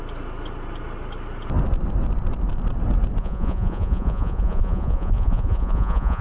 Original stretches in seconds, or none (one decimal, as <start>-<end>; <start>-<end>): 0.0-3.2